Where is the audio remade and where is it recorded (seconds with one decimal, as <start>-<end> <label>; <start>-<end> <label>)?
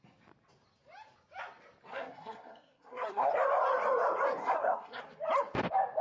0.0-1.9 recorded; 1.9-3.3 remade; 3.3-4.4 recorded; 4.4-5.0 remade; 5.0-6.0 recorded